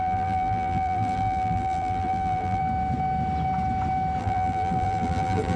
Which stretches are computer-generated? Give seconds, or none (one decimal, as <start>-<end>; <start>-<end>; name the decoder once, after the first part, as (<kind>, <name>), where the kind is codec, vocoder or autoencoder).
0.0-2.6 (vocoder, BigVGAN v2); 4.2-5.6